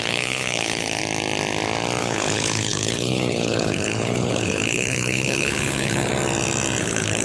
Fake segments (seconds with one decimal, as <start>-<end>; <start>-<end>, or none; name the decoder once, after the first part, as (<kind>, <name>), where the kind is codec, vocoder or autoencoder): 0.0-1.0 (codec, HILCodec); 2.0-6.1; 6.8-7.2